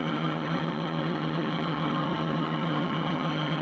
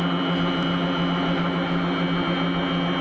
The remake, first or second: first